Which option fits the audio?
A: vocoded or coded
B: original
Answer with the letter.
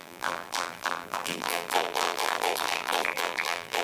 A